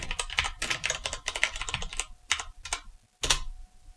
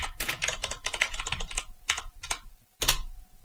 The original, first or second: first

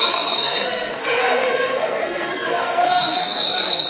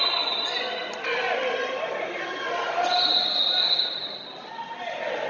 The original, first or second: second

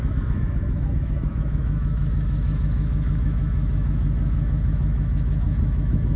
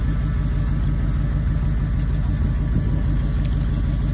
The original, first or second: second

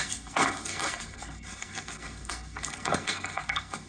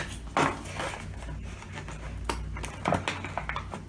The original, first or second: second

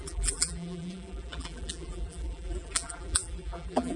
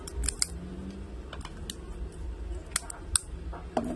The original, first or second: second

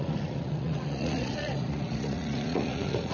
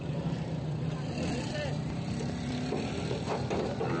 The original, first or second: second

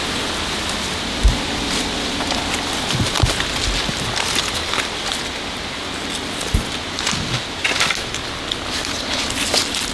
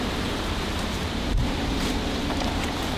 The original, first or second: first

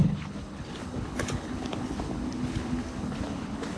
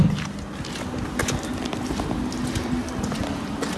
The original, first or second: second